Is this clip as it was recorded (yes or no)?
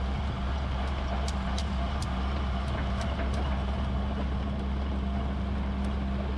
yes